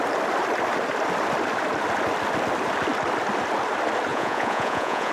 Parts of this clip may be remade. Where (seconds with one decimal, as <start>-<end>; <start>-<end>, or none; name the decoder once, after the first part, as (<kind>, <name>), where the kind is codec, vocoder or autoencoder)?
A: 4.1-5.1 (vocoder, Vocos)